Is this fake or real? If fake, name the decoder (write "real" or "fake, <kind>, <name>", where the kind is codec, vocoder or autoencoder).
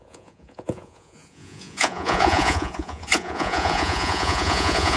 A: fake, vocoder, Vocos